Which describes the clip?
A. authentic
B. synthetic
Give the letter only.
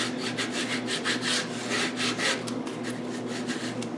A